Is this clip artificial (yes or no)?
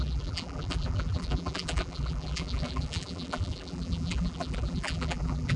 yes